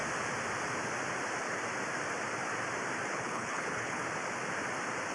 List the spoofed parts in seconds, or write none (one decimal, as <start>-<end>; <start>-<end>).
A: 3.1-4.0